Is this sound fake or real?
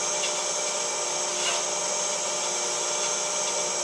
real